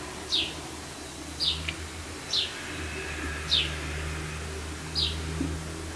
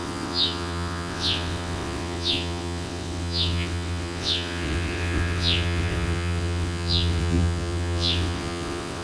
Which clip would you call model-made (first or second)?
second